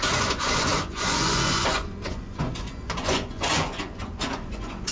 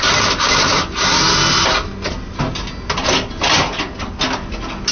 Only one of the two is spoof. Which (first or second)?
first